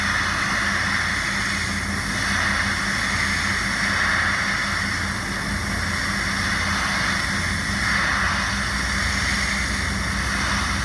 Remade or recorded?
recorded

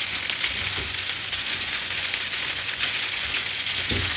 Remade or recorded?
remade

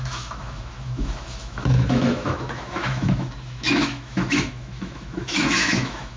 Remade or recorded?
remade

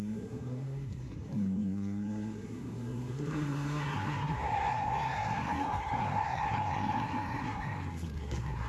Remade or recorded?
remade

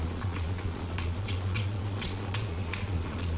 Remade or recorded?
remade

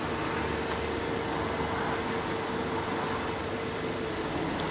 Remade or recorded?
recorded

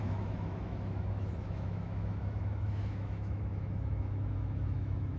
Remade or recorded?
remade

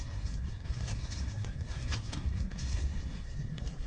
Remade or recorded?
remade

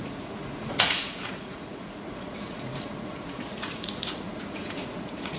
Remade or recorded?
remade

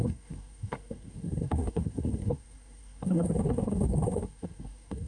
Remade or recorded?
remade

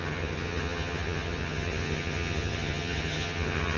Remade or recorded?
remade